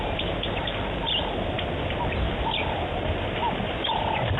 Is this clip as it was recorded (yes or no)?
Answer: yes